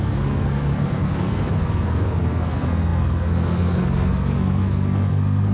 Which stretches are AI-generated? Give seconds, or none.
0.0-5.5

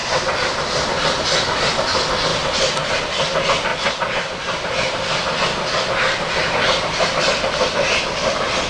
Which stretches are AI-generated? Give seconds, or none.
1.2-2.3; 3.0-3.7; 7.2-8.7